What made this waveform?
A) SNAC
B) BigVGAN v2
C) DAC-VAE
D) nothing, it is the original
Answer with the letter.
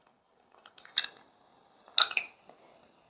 D